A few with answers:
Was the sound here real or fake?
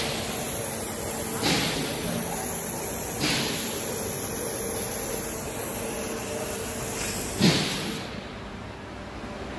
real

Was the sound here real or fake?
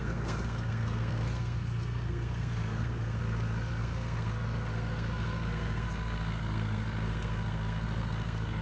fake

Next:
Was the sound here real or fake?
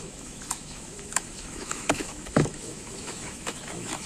fake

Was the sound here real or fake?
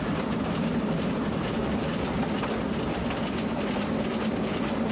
real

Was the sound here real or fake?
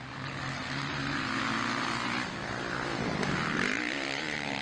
real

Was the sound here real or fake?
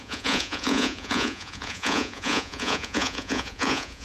fake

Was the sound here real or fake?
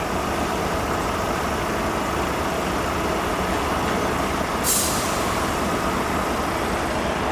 real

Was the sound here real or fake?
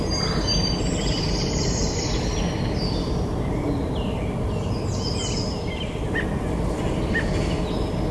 real